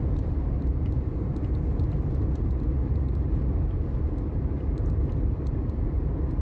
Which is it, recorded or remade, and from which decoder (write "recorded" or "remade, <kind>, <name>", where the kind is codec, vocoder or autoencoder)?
remade, vocoder, BigVGAN v2